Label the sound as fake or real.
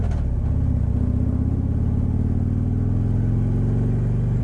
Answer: real